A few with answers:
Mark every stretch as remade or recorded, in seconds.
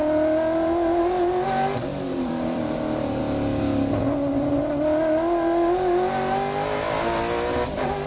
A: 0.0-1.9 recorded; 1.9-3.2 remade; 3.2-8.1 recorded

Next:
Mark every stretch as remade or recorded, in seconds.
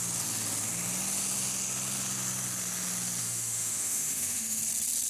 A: 0.0-3.2 recorded; 3.2-4.6 remade; 4.6-5.1 recorded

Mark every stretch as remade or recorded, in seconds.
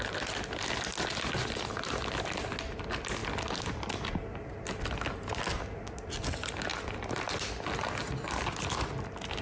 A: 0.0-9.4 recorded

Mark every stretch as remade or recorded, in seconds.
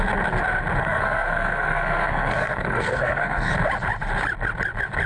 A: 0.0-0.8 recorded; 0.8-3.5 remade; 3.5-5.1 recorded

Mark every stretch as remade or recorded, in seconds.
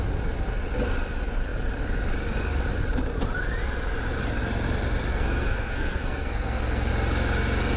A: 0.0-5.1 recorded; 5.1-6.9 remade; 6.9-7.8 recorded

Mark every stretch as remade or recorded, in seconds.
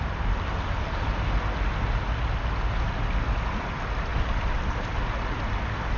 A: 0.0-6.0 recorded